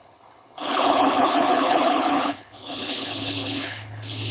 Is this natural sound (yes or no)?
no